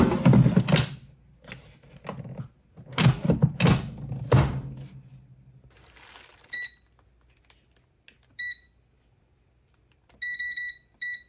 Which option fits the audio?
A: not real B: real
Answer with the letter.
B